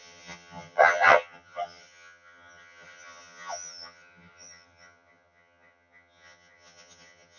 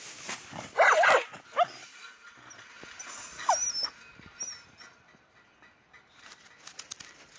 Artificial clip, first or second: first